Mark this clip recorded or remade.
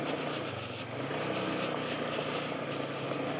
recorded